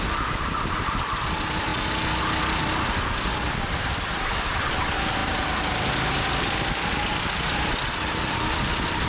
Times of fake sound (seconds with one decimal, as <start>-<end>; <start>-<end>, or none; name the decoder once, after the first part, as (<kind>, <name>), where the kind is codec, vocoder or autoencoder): 0.0-1.7 (vocoder, BigVGAN v2); 2.2-2.6; 3.3-9.1